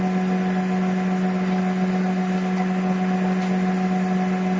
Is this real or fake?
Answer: real